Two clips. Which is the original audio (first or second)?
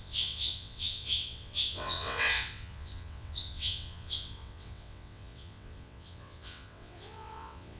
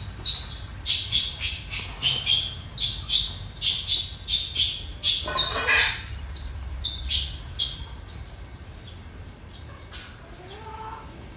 second